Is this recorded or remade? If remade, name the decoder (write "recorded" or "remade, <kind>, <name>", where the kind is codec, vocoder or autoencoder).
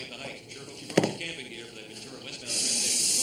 recorded